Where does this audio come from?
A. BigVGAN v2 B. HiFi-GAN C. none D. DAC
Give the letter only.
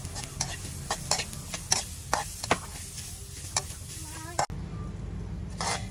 C